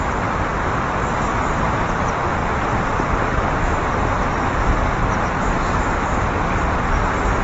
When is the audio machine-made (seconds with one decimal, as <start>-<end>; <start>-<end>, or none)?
2.4-5.4

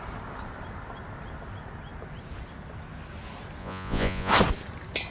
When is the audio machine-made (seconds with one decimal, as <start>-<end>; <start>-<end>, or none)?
3.6-4.3

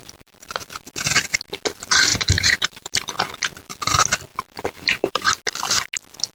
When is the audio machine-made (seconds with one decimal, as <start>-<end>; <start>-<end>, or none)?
0.0-0.8; 2.1-3.1; 4.3-5.3

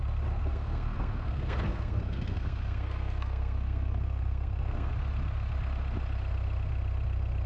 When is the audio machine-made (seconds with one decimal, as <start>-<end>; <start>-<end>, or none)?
0.4-4.9

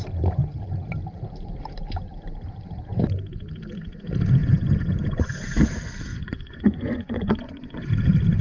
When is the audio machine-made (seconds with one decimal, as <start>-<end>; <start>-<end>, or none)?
4.4-5.3; 6.1-7.9

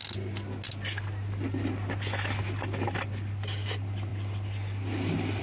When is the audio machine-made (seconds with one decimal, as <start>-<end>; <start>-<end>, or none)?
none

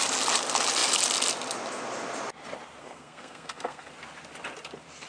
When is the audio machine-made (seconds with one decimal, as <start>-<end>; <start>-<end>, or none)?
2.8-3.9

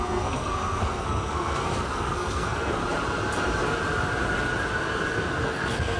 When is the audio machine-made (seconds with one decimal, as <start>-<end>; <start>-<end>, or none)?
0.0-2.8; 5.3-6.0